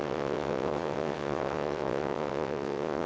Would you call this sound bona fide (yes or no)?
no